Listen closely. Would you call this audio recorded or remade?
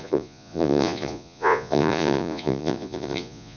remade